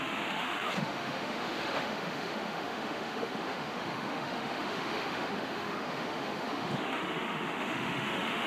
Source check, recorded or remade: remade